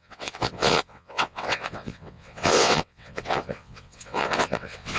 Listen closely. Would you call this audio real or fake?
fake